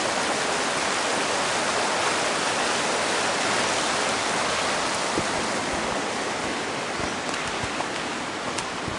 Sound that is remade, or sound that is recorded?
recorded